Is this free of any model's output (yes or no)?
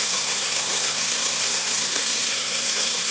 no